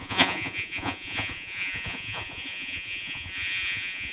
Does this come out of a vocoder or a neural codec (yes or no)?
yes